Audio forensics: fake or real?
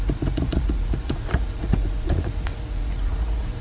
fake